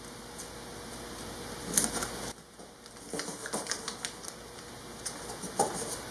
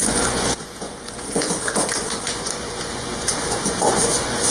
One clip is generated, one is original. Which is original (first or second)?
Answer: first